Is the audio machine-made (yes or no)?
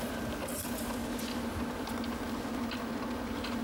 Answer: no